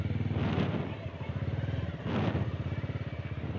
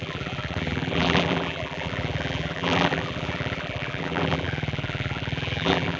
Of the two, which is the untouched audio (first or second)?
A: first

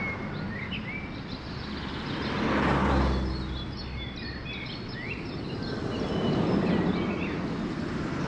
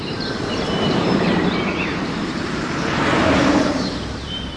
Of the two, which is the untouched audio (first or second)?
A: first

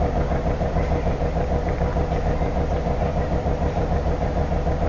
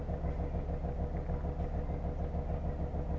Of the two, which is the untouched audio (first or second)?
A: second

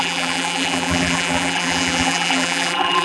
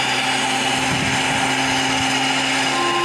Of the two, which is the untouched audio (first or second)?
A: second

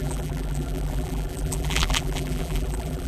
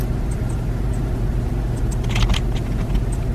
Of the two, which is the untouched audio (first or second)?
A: second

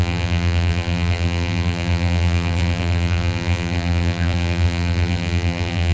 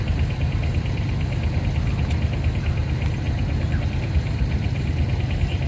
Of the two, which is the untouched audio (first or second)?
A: second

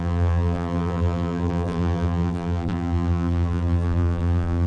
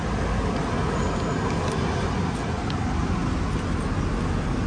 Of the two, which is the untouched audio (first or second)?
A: second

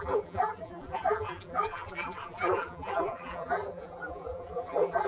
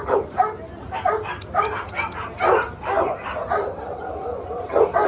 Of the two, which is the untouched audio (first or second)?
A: second